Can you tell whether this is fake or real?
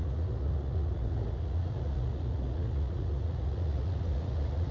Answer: fake